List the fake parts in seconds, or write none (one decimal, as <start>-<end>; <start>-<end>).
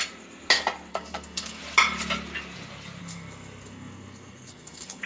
0.9-1.6; 3.0-5.1